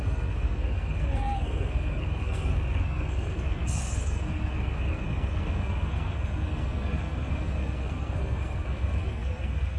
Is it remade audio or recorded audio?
remade